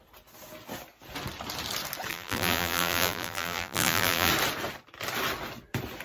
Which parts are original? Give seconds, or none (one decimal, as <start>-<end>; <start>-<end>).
0.0-2.1; 4.3-6.0